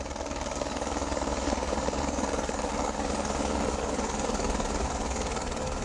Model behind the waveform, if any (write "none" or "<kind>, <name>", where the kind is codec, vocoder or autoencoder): codec, DAC